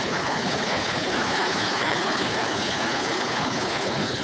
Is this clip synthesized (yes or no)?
yes